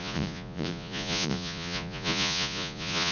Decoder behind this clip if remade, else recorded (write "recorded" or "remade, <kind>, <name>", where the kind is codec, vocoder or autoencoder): remade, vocoder, Vocos